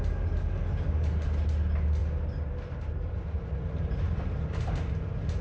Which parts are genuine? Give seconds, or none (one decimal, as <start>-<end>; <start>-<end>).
0.0-5.4